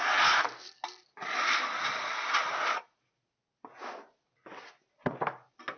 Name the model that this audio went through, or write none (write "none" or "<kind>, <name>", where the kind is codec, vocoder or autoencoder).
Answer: none